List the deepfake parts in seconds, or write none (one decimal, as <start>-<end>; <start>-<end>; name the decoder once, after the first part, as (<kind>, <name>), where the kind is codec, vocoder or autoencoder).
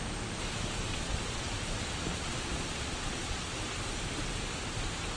0.9-1.5 (vocoder, Vocos); 2.1-3.5